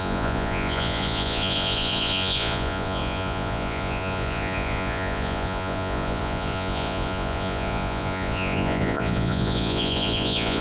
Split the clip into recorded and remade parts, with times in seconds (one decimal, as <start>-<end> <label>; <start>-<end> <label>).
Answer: 0.0-10.6 remade